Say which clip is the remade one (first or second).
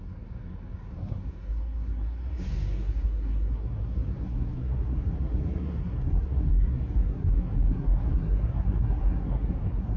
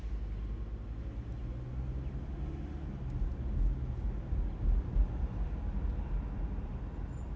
first